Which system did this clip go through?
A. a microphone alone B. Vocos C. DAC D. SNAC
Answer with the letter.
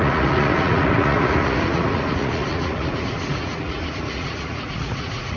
B